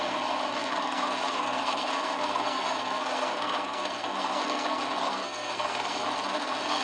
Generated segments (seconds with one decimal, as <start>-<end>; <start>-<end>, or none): 0.0-6.8